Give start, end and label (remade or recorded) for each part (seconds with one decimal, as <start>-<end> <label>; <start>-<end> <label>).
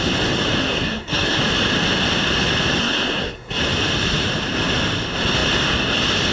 0.0-0.6 recorded; 0.6-1.4 remade; 1.4-2.8 recorded; 2.8-3.6 remade; 3.6-6.3 recorded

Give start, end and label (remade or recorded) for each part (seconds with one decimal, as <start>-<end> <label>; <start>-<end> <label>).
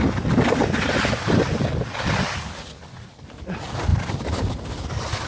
0.0-5.3 recorded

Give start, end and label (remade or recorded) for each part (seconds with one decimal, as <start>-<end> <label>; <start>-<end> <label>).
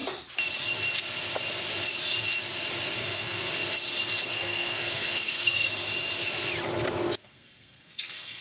0.0-3.0 recorded; 3.0-3.5 remade; 3.5-4.3 recorded; 4.3-5.7 remade; 5.7-7.2 recorded; 7.2-8.4 remade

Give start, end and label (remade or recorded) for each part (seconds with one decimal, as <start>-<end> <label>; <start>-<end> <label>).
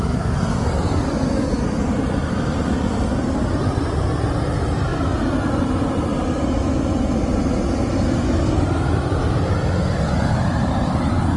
0.0-11.4 recorded